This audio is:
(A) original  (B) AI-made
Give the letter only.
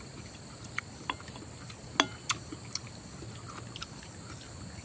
A